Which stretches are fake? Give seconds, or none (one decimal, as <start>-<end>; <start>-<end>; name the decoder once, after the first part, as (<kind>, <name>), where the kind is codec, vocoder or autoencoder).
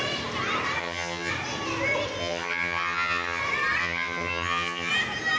0.8-1.3 (vocoder, HiFi-GAN); 2.2-3.4; 3.8-4.9